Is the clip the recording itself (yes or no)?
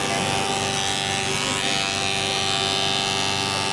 yes